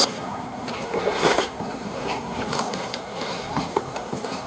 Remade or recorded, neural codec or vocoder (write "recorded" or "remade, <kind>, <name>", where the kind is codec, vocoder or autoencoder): remade, codec, SNAC